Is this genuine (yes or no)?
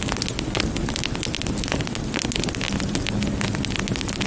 yes